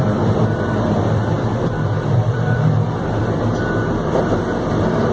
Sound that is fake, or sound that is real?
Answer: fake